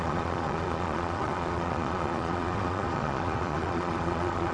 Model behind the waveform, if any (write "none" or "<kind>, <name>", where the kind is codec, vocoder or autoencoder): vocoder, Vocos